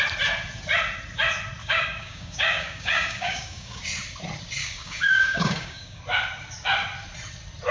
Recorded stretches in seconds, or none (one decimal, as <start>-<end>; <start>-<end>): 0.0-1.6; 3.8-4.6; 6.0-7.7